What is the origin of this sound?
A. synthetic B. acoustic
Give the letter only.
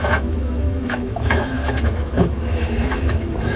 A